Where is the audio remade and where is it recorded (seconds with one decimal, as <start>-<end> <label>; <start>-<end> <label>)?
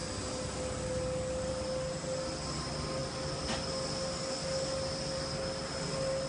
0.0-6.3 recorded